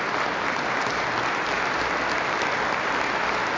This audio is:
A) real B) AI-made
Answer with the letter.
A